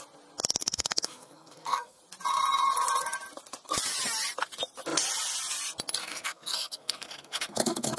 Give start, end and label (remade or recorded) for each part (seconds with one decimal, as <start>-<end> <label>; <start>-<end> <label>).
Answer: 0.0-0.6 recorded; 0.6-2.0 remade; 2.0-6.0 recorded; 6.0-8.0 remade